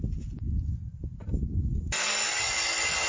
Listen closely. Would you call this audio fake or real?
real